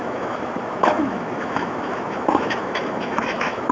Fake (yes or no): yes